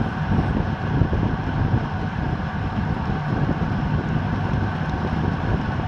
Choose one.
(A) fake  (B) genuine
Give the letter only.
B